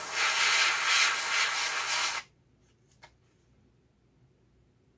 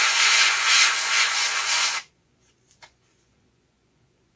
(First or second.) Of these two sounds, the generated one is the second